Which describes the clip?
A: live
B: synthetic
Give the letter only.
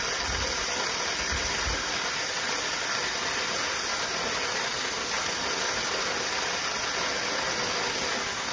A